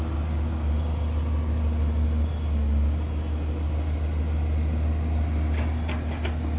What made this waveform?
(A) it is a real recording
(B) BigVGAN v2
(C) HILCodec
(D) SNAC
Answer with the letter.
A